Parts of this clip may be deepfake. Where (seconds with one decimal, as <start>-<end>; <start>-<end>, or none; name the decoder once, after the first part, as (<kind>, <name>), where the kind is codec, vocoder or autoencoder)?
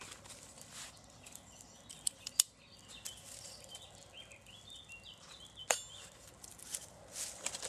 none